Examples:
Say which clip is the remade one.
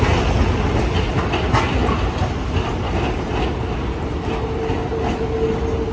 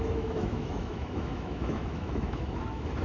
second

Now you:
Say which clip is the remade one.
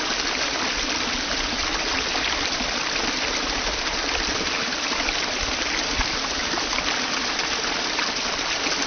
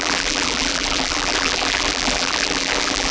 second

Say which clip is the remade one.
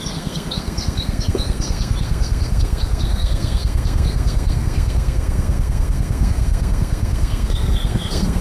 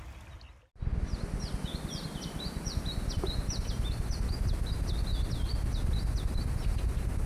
first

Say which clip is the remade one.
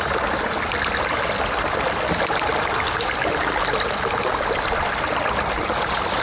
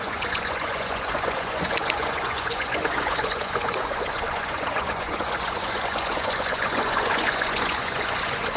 second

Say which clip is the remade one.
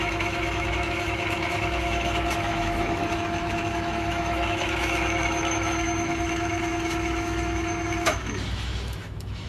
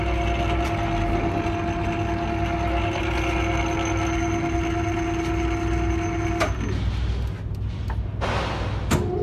first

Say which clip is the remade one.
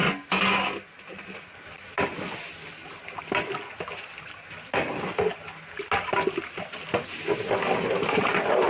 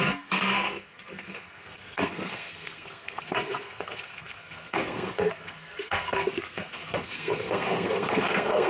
second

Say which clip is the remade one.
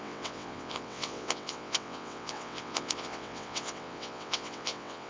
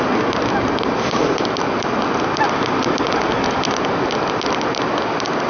first